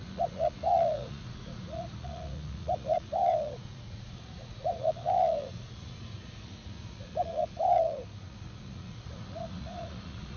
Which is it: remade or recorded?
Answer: remade